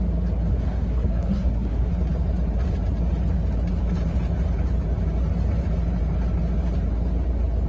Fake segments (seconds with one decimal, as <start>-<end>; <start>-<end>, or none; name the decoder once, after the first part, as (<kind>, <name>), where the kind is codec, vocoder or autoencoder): 0.5-1.9 (codec, SNAC)